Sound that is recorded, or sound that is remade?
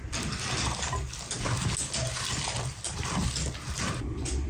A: recorded